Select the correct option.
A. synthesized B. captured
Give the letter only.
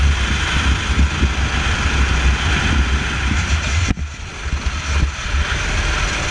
B